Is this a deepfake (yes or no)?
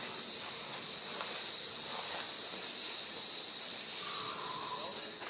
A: no